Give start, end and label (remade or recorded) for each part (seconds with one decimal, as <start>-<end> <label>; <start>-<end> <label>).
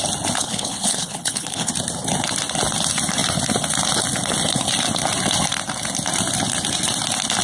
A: 0.0-0.4 recorded; 0.4-1.7 remade; 1.7-7.4 recorded